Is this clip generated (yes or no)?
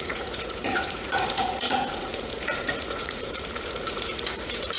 yes